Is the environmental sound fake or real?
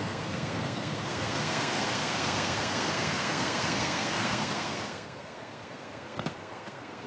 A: fake